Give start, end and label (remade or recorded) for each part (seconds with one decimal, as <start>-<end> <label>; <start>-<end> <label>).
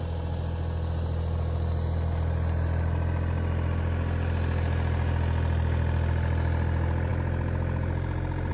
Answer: 0.0-8.5 recorded